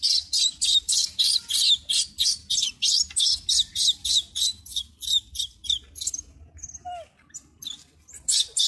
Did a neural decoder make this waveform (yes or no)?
no